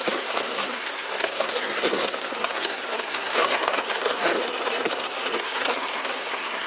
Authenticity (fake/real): fake